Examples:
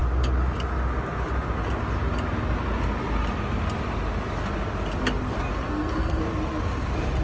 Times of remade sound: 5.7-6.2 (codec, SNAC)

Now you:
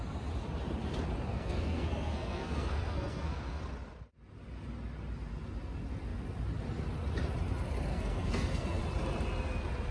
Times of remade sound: 1.3-3.6 (codec, SNAC); 7.9-8.8